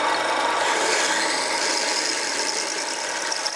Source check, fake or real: real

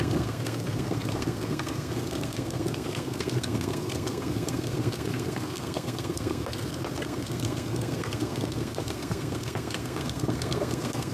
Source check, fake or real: fake